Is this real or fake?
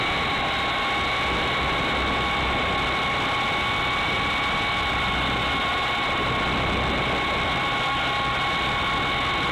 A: real